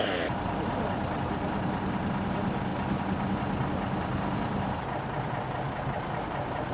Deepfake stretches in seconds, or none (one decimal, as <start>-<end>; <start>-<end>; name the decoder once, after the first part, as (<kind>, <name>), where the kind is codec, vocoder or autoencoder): 0.0-2.7 (vocoder, BigVGAN v2); 5.8-6.7